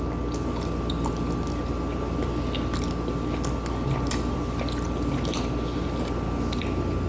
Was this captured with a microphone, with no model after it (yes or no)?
yes